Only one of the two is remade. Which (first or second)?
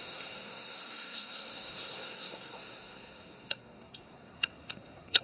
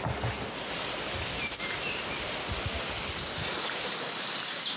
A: first